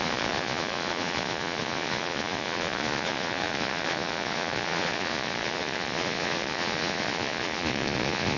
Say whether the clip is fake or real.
fake